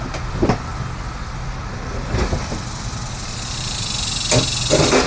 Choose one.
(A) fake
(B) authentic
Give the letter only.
B